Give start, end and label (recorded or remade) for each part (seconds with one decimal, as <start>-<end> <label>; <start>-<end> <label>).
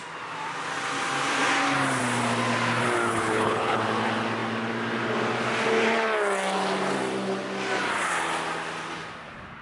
0.0-3.1 recorded; 3.1-3.8 remade; 3.8-9.6 recorded